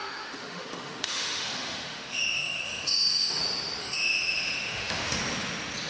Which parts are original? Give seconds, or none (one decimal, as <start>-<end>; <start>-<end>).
3.4-3.8; 5.2-5.9